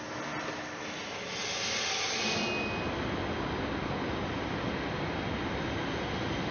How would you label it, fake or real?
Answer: real